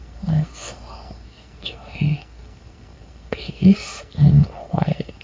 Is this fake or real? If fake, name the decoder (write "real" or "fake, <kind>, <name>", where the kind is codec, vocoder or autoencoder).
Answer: fake, codec, SNAC